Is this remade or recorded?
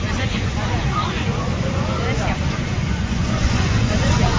remade